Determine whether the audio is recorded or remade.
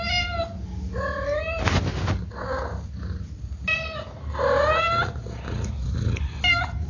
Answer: recorded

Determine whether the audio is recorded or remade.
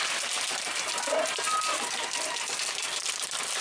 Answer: recorded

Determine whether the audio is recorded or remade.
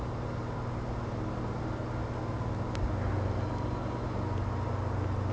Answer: recorded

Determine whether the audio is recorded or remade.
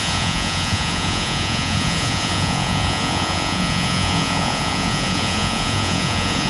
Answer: remade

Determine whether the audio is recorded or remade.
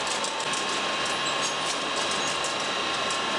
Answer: recorded